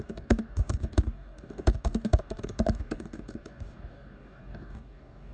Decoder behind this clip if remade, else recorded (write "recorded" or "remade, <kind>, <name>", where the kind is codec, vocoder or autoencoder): remade, codec, DAC